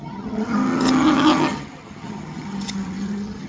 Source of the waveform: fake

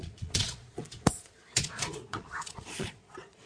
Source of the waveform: fake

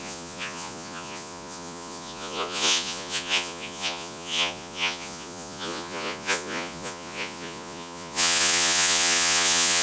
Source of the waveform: fake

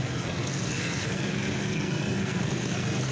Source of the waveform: fake